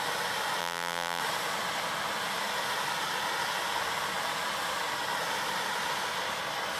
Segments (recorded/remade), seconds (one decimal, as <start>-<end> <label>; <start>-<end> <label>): 0.0-0.6 recorded; 0.6-1.2 remade; 1.2-6.8 recorded